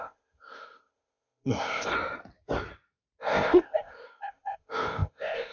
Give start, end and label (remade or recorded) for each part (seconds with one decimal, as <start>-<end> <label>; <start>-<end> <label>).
0.0-1.9 remade; 1.9-3.2 recorded; 3.2-5.5 remade